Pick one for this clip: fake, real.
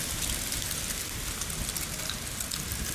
real